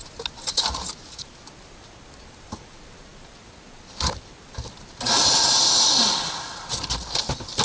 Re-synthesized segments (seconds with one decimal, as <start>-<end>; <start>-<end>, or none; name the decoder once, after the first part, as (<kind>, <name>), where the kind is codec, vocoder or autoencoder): none